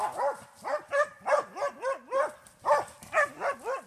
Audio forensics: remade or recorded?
recorded